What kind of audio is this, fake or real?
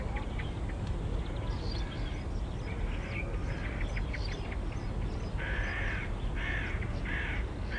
real